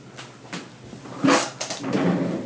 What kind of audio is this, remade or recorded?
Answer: recorded